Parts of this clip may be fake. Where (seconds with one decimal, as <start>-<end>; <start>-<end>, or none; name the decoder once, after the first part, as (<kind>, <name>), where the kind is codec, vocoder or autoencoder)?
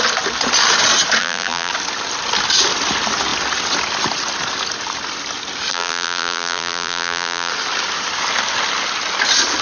1.2-1.7 (vocoder, BigVGAN v2); 5.7-7.5